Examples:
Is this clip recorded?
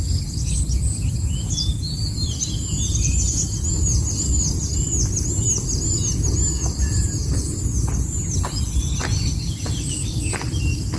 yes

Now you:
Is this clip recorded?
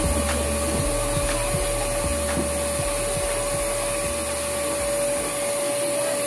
yes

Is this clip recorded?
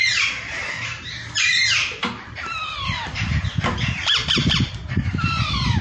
no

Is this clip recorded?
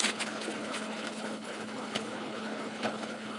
no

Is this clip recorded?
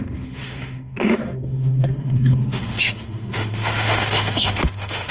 no